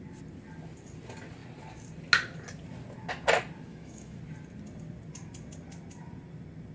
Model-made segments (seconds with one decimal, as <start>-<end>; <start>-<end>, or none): 3.7-4.2